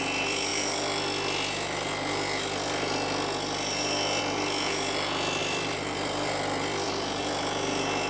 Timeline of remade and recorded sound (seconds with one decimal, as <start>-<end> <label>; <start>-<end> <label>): 0.0-5.4 recorded; 5.4-7.2 remade; 7.2-8.1 recorded